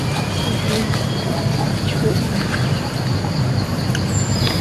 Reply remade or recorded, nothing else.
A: recorded